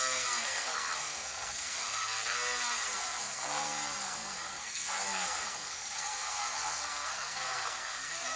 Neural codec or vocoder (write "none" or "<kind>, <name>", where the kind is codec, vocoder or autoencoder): codec, SNAC